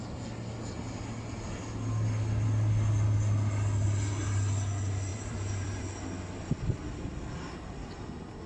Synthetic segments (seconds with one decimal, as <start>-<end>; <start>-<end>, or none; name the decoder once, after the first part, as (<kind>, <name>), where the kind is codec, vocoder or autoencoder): 5.1-5.8 (vocoder, BigVGAN v2)